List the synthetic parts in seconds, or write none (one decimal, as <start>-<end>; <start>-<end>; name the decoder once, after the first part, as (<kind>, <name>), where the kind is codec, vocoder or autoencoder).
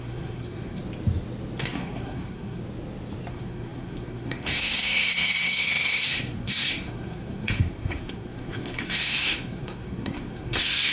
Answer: 0.0-0.8 (codec, SNAC); 1.6-2.6; 3.3-10.9